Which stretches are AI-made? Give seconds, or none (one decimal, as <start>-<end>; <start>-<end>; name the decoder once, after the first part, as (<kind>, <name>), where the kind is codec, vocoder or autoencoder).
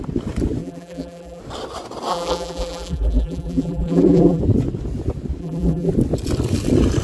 0.6-1.4 (vocoder, BigVGAN v2); 2.1-4.4; 5.4-5.9